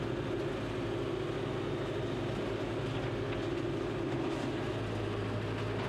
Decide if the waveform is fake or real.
real